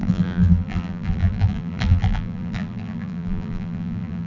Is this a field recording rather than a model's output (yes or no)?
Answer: no